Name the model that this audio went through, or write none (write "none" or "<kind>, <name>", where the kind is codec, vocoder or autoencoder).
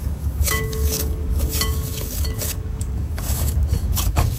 codec, DAC